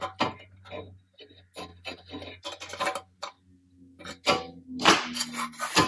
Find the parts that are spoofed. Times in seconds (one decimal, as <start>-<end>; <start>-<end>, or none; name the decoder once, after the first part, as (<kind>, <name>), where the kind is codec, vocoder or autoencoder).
none